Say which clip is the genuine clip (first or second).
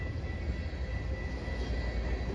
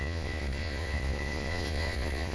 first